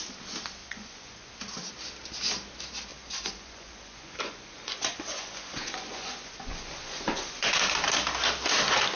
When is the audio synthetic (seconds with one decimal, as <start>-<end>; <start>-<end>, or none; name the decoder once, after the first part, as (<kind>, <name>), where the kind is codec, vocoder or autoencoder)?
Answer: 0.6-1.3 (vocoder, Vocos); 2.9-7.5